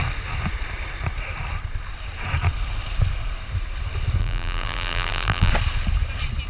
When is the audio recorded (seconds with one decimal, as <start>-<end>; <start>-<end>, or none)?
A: 0.0-4.2; 5.5-6.5